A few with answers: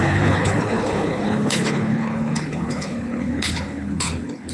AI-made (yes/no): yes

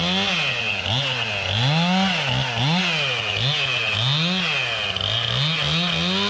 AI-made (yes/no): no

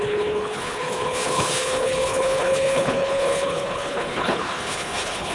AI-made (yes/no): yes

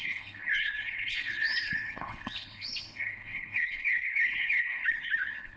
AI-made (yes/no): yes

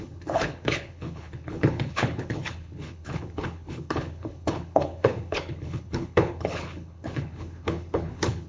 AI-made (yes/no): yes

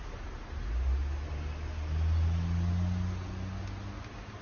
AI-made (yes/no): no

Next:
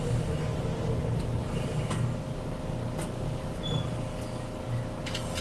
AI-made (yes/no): no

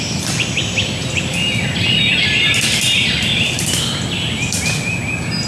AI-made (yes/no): no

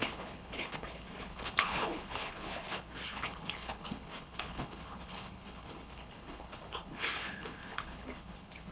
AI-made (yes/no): yes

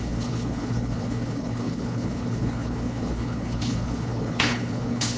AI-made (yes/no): yes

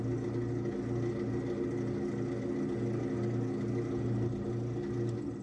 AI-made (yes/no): no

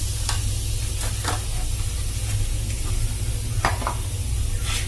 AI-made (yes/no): no